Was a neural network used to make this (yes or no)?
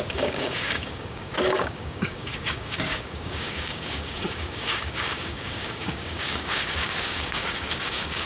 yes